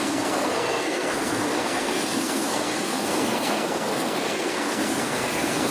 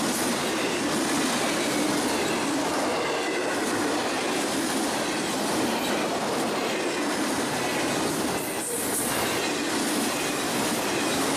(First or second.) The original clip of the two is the second